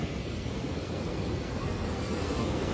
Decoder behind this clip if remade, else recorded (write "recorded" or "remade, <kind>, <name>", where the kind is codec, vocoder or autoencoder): remade, codec, SNAC